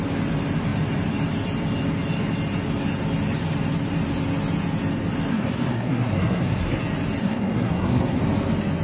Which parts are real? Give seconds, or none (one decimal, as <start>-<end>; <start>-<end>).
0.0-5.3; 6.8-7.2; 8.2-8.8